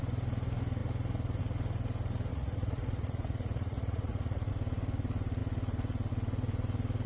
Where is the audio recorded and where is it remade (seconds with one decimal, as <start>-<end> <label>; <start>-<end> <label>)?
0.0-2.3 recorded; 2.3-4.5 remade; 4.5-7.1 recorded